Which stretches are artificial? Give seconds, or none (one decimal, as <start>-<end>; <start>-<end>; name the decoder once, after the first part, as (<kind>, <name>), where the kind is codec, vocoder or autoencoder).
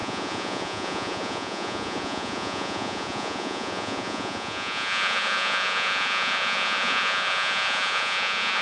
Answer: 0.0-8.6 (vocoder, Vocos)